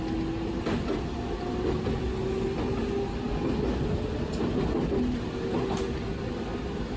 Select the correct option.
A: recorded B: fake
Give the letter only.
A